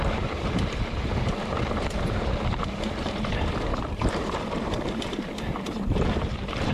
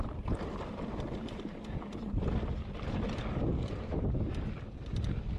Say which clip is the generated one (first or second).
first